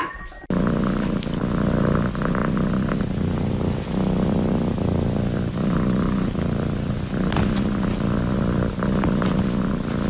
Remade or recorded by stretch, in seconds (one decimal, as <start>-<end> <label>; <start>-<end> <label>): 0.0-10.1 recorded